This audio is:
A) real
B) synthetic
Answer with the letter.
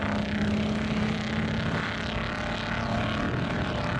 A